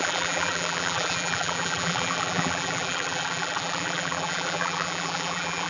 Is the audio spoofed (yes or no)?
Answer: yes